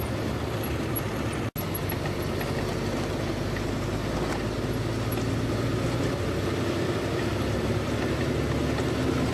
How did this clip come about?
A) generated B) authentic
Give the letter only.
B